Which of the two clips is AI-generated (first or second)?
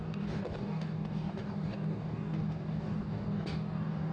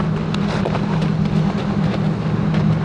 first